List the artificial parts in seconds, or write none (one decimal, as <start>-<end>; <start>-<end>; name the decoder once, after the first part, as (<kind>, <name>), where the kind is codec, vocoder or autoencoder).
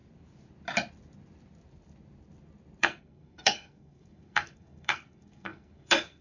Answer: 2.8-6.2 (codec, SNAC)